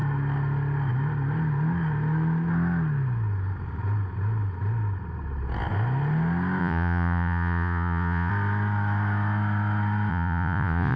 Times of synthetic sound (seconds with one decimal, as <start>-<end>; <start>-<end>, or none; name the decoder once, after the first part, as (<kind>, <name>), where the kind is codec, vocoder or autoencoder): 6.6-8.3 (vocoder, Vocos); 10.1-11.0